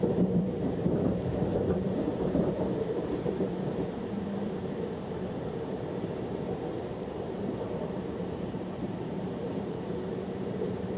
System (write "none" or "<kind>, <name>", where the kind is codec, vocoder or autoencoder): vocoder, BigVGAN v2